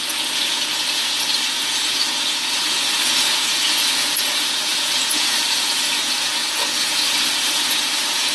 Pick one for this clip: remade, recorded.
remade